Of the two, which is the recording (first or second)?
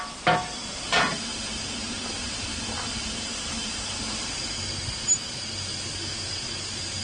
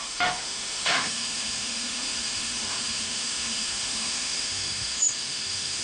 first